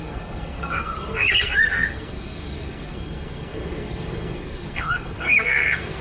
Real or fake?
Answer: fake